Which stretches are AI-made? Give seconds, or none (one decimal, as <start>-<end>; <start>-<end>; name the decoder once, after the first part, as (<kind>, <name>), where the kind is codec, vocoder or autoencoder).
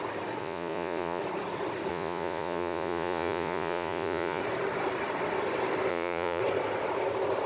0.4-1.2 (vocoder, Vocos); 1.9-4.4; 5.9-6.4